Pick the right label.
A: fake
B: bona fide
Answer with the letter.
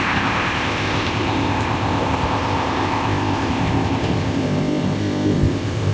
A